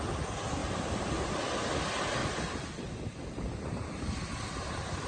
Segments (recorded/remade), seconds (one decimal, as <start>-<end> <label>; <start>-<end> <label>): 0.0-0.6 recorded; 0.6-1.1 remade; 1.1-2.2 recorded; 2.2-5.1 remade